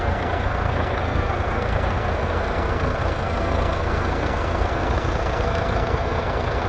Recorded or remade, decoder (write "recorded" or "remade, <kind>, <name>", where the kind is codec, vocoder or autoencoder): remade, codec, SNAC